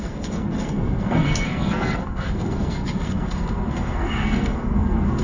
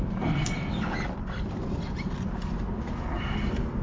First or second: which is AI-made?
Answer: first